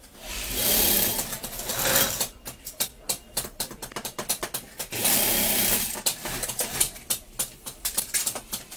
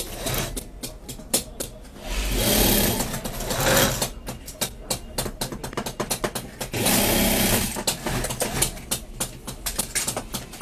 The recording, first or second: second